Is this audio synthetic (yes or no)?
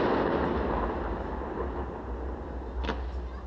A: no